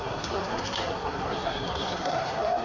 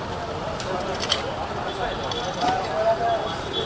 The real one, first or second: second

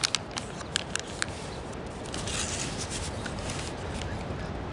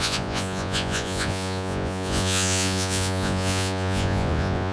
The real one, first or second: first